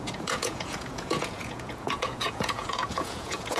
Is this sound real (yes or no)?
no